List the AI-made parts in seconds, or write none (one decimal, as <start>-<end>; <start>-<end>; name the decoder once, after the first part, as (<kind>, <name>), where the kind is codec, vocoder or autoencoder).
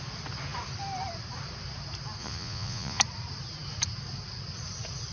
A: 2.2-3.0 (vocoder, Vocos)